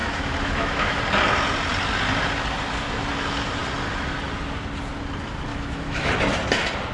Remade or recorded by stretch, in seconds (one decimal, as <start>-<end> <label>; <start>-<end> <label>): 0.0-1.0 remade; 1.0-5.5 recorded; 5.5-6.1 remade; 6.1-6.9 recorded